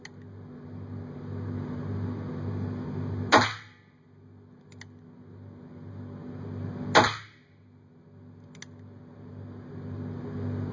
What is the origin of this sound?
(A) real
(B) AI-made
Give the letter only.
A